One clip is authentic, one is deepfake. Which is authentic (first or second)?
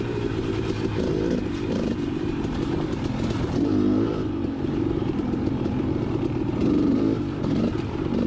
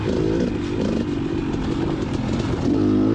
second